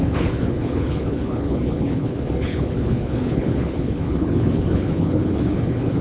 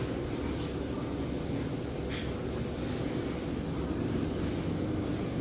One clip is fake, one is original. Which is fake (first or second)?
first